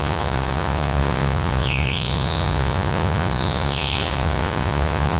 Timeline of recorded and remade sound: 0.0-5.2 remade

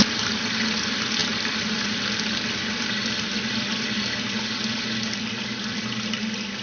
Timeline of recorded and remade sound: 0.0-6.6 recorded

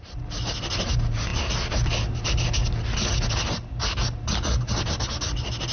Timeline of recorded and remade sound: 0.0-5.7 recorded